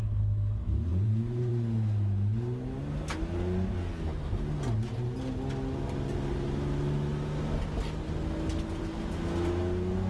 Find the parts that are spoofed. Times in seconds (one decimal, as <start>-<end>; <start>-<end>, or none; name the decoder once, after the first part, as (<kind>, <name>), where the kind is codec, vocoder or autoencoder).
0.9-1.5 (vocoder, BigVGAN v2)